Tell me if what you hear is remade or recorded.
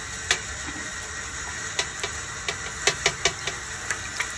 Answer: recorded